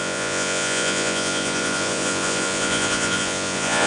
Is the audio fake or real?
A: fake